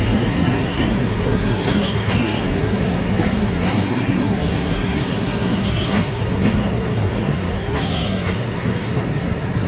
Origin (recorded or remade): remade